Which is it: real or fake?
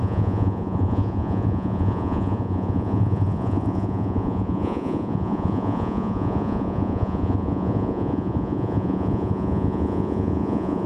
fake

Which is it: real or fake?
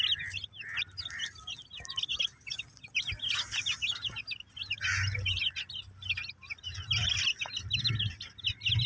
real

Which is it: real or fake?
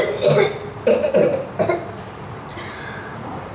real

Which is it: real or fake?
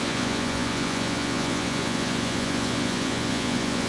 fake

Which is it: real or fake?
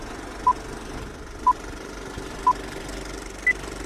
real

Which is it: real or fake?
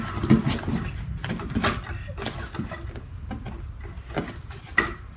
real